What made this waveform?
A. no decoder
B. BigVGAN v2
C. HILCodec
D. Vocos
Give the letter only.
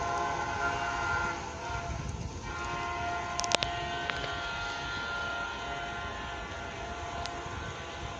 A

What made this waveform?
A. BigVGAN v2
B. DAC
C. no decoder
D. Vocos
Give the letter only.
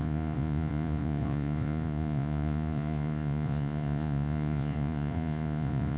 D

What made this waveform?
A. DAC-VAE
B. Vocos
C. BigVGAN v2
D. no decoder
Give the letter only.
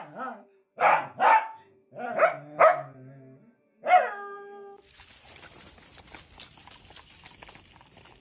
D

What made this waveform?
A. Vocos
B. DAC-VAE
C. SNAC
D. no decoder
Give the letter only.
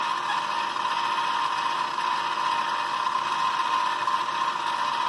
D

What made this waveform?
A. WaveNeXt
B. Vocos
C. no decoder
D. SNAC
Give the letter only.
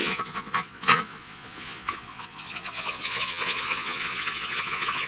B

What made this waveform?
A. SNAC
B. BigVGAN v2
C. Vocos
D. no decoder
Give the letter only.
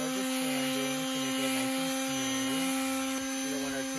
D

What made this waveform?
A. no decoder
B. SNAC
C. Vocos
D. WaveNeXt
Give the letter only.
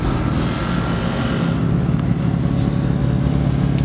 A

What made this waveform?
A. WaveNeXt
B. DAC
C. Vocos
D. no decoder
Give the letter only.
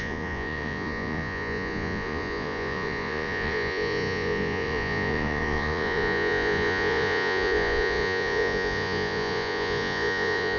C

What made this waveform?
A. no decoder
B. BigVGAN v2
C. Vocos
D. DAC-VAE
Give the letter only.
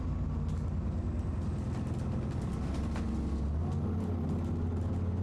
A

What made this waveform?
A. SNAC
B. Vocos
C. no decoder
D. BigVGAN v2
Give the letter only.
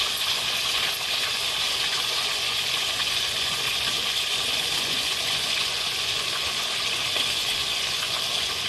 B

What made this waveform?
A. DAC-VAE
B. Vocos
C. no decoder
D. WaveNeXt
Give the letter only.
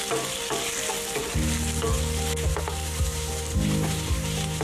C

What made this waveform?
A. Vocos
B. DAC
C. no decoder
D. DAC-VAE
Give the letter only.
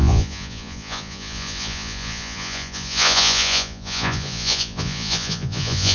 A